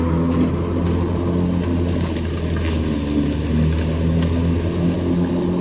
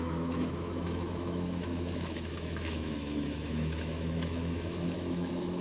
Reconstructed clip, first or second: second